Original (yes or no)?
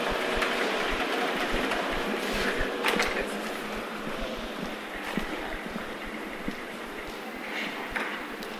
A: no